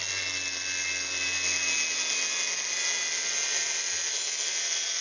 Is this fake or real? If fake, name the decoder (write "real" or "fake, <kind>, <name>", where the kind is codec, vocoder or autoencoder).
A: real